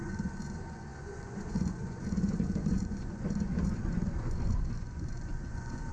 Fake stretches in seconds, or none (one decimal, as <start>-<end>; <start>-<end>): 0.0-5.9

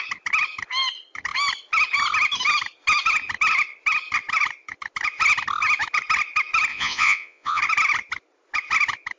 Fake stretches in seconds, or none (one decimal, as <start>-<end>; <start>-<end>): 6.7-7.6